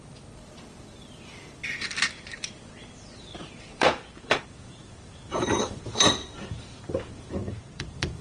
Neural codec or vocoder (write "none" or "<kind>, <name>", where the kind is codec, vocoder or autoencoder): vocoder, BigVGAN v2